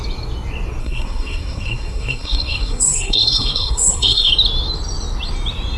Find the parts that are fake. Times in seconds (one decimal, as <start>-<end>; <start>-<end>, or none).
0.8-4.3